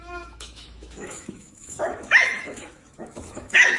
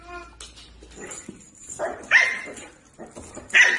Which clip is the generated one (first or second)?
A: first